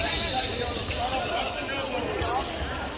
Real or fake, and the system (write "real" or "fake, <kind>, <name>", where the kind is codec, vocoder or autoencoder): real